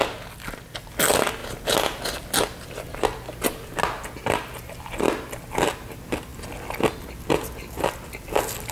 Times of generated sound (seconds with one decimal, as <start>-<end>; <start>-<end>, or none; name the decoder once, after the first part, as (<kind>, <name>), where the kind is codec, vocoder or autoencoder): none